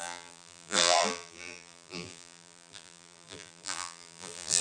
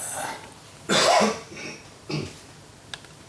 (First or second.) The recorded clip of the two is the second